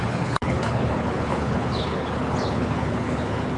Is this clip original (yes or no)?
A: no